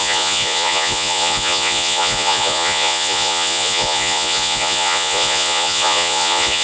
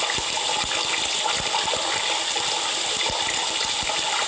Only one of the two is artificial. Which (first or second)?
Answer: first